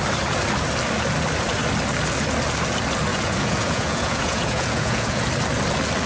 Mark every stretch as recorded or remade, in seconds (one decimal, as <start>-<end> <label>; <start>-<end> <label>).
0.0-3.1 recorded; 3.1-5.3 remade; 5.3-6.1 recorded